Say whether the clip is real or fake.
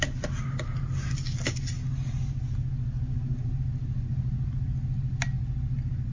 real